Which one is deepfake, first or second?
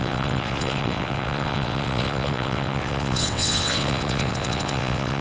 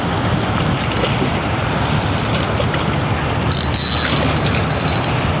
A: first